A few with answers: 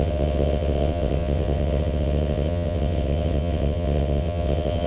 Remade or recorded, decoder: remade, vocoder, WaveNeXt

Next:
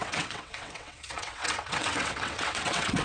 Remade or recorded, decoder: remade, vocoder, WaveNeXt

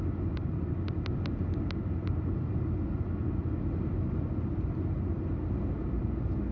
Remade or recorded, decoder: recorded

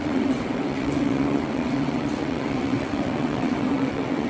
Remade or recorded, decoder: remade, vocoder, WaveNeXt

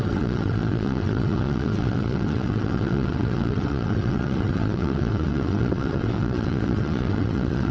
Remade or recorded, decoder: remade, vocoder, WaveNeXt